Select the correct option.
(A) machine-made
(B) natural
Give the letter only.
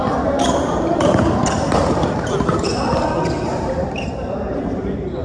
A